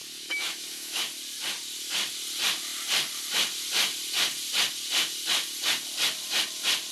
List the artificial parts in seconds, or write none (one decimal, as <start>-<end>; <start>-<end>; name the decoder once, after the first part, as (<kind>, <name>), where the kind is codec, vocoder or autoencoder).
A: 0.0-1.0 (autoencoder, DAC-VAE)